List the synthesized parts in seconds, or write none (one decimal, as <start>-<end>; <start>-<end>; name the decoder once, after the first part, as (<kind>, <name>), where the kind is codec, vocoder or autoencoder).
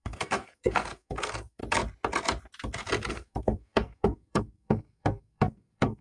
0.0-1.6 (codec, SNAC); 3.1-6.0